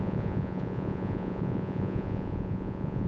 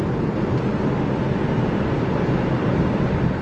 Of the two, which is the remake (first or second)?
first